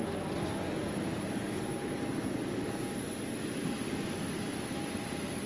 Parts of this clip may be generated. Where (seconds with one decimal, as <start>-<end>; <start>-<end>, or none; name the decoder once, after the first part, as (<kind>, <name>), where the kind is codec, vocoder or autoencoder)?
3.8-4.8 (vocoder, BigVGAN v2)